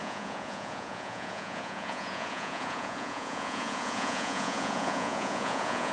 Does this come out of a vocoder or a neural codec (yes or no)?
yes